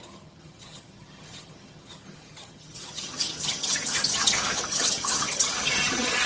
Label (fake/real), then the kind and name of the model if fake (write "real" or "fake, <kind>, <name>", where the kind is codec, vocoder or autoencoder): fake, vocoder, HiFi-GAN